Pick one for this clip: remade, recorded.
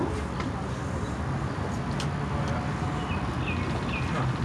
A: recorded